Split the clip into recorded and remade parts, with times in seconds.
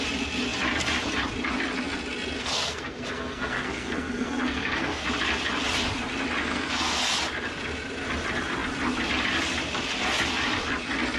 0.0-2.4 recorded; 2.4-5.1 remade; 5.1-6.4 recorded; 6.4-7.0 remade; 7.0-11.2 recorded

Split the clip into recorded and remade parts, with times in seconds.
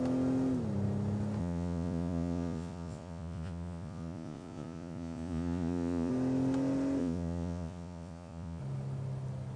0.0-1.4 recorded; 1.4-6.1 remade; 6.1-7.0 recorded; 7.0-8.6 remade; 8.6-9.6 recorded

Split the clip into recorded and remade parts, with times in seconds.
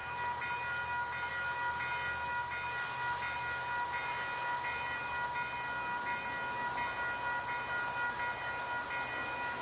0.0-9.6 recorded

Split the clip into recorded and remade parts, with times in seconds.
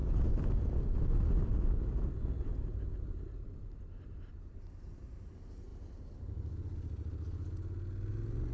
0.0-8.5 recorded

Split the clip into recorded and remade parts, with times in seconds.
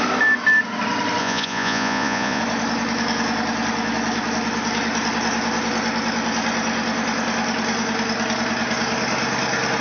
0.0-1.2 recorded; 1.2-2.4 remade; 2.4-9.8 recorded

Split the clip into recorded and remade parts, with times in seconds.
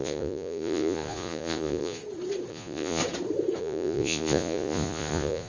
0.0-2.0 remade; 2.0-2.5 recorded; 2.5-3.0 remade; 3.0-3.6 recorded; 3.6-5.5 remade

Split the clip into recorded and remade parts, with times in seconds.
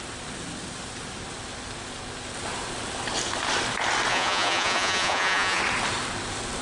0.0-4.1 recorded; 4.1-5.6 remade; 5.6-6.6 recorded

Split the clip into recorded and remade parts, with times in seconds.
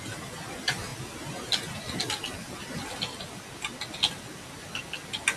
0.0-5.4 recorded